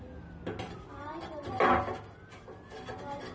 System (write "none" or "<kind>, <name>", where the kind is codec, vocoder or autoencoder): none